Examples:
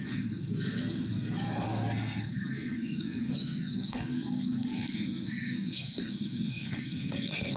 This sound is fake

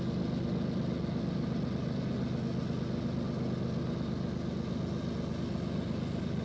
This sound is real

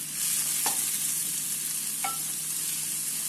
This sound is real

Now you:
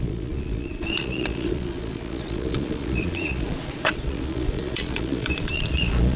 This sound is fake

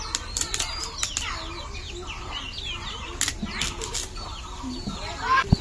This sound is real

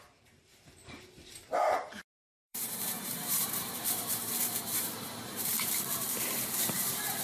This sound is fake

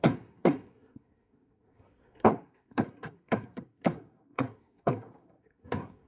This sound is fake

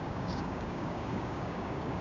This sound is fake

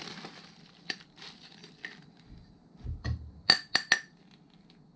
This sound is real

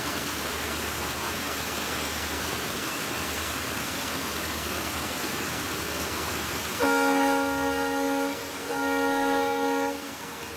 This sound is fake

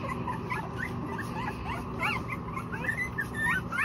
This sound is real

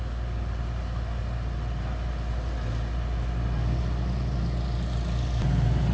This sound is real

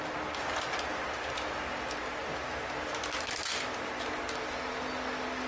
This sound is real